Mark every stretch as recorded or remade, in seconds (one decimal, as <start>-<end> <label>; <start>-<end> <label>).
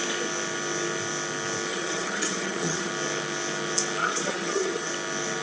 0.0-1.7 recorded; 1.7-2.9 remade; 2.9-4.0 recorded; 4.0-4.9 remade; 4.9-5.4 recorded